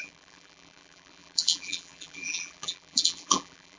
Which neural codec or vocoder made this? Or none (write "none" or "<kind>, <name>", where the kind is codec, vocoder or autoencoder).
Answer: vocoder, BigVGAN v2